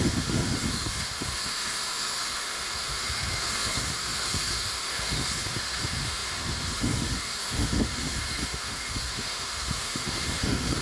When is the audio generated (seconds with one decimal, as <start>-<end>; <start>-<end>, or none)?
0.0-10.8